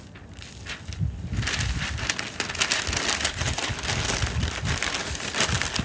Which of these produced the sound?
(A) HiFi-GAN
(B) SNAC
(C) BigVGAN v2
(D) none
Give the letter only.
D